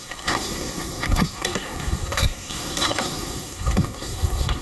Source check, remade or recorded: remade